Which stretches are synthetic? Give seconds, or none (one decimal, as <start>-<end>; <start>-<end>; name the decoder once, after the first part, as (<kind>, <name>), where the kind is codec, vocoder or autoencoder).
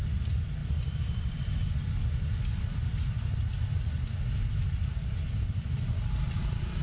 0.6-1.7 (vocoder, BigVGAN v2)